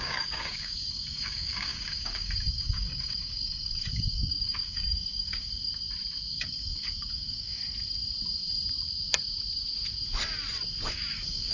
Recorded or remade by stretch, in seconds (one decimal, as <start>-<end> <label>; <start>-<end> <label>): 0.0-5.7 remade; 5.7-6.3 recorded; 6.3-7.6 remade; 7.6-10.9 recorded; 10.9-11.5 remade